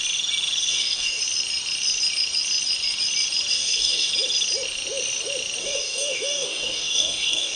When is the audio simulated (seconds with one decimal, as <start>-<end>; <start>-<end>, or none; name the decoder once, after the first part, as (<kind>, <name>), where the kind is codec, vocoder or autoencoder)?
0.7-1.2 (codec, DAC); 3.5-4.1; 5.6-7.6